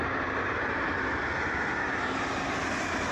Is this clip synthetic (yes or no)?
no